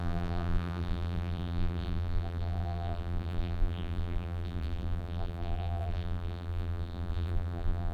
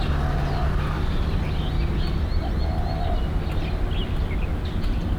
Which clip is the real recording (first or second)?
second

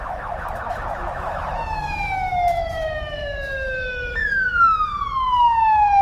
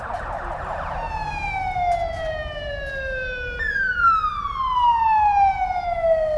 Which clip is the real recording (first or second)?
second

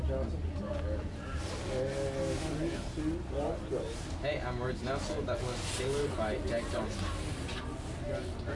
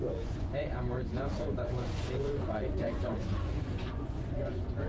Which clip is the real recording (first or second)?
first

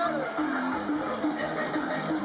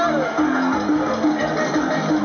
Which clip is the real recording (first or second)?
second